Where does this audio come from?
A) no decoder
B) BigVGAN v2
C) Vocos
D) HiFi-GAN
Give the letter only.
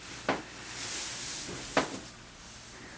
A